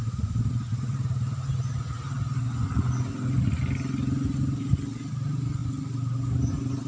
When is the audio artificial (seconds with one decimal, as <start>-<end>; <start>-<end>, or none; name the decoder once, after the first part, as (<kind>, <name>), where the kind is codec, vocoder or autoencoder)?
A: 0.0-1.5 (vocoder, BigVGAN v2); 5.1-5.6; 6.5-6.9